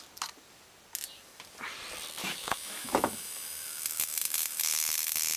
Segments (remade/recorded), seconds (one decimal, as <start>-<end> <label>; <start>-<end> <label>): 0.0-2.2 recorded; 2.2-5.4 remade